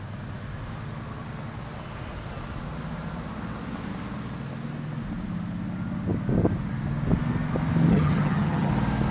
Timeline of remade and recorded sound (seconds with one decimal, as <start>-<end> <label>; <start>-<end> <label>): 0.0-7.9 recorded; 7.9-8.7 remade; 8.7-9.1 recorded